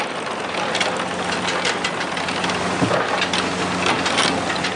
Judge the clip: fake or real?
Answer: real